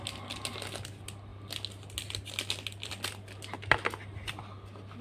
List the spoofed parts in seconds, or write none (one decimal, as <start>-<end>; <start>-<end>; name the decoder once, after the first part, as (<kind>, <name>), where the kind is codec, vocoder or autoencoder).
none